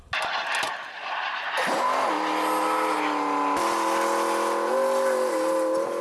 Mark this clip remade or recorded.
recorded